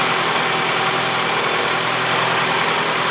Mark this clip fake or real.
real